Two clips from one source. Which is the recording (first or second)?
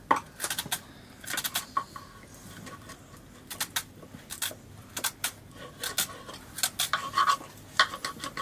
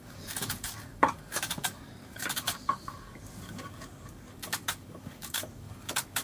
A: first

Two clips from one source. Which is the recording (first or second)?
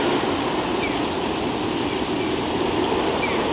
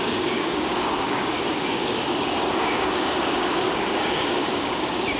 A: first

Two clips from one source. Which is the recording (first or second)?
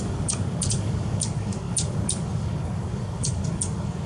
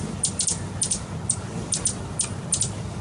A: second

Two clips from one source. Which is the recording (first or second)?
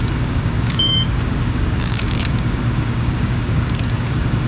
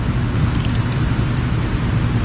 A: second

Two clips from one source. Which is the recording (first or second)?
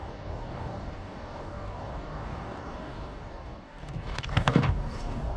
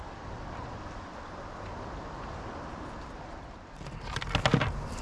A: second